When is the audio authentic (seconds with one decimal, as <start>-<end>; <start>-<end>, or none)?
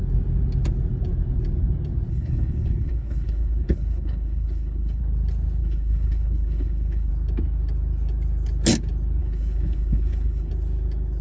0.0-2.1; 5.0-5.6; 7.1-9.2; 10.5-11.2